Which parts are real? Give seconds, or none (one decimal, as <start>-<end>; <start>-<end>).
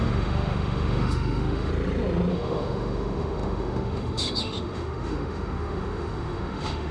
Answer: 1.7-2.3